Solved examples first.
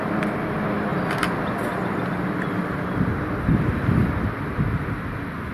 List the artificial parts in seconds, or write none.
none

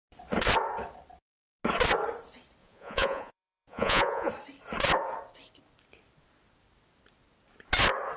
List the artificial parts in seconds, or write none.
2.6-4.3

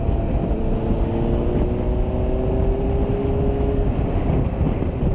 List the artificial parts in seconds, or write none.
3.2-3.7